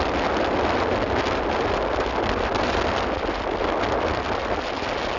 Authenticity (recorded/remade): recorded